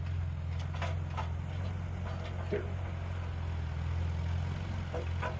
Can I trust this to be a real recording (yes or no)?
yes